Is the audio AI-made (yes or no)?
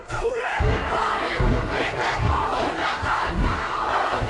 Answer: yes